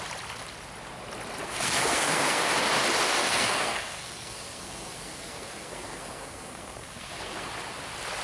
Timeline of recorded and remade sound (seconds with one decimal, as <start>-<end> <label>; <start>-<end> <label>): 0.0-1.4 recorded; 1.4-2.5 remade; 2.5-3.2 recorded; 3.2-7.5 remade; 7.5-8.2 recorded